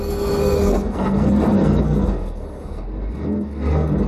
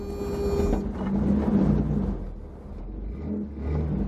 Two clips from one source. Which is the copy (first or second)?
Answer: first